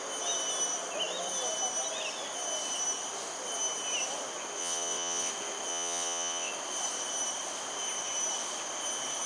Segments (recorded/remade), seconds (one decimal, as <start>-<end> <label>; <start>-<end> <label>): 0.0-4.6 recorded; 4.6-5.3 remade; 5.3-5.7 recorded; 5.7-6.5 remade; 6.5-9.3 recorded